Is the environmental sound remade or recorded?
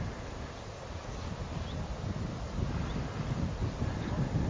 recorded